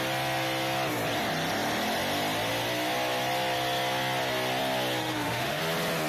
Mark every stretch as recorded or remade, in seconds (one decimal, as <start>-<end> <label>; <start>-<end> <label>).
0.0-5.0 recorded; 5.0-5.6 remade; 5.6-6.1 recorded